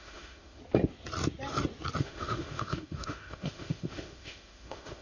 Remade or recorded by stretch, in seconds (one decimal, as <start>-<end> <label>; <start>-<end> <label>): 0.0-0.6 remade; 0.6-2.0 recorded; 2.0-5.0 remade